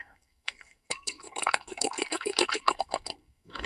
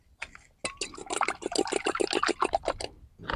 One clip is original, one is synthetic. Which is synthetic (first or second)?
first